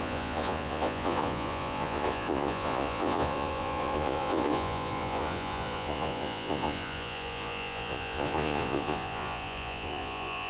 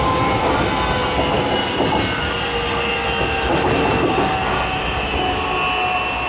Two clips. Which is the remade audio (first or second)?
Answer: first